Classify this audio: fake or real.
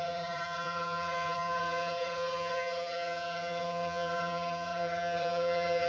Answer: fake